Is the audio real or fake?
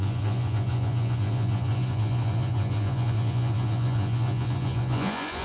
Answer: fake